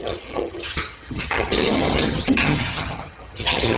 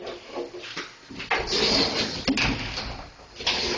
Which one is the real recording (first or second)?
second